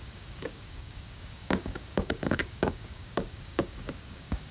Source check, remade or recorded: remade